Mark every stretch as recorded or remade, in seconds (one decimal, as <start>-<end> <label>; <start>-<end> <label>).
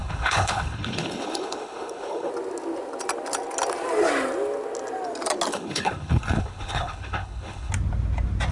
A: 0.0-2.3 remade; 2.3-5.5 recorded; 5.5-7.7 remade; 7.7-8.5 recorded